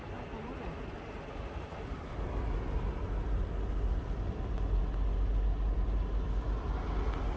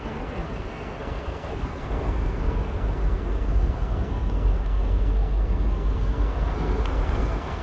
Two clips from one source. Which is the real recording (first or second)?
first